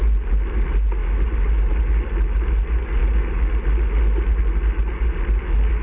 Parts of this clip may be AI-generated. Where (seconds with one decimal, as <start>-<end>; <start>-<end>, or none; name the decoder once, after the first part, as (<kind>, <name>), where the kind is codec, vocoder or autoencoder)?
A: none